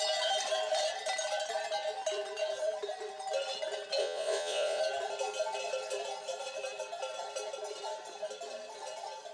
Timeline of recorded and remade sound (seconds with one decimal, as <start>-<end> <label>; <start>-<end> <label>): 0.0-4.0 recorded; 4.0-4.8 remade; 4.8-9.3 recorded